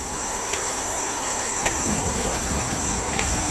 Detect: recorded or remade remade